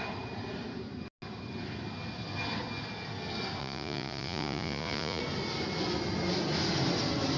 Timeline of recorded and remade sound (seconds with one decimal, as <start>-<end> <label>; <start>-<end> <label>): 0.0-3.6 recorded; 3.6-5.2 remade; 5.2-7.4 recorded